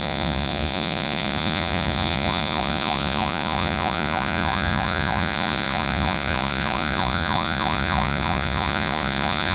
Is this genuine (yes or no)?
no